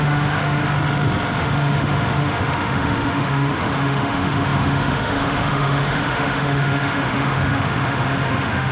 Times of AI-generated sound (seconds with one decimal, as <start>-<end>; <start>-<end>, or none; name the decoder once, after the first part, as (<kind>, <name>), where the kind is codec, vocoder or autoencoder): 0.0-0.6 (autoencoder, DAC-VAE); 1.4-8.7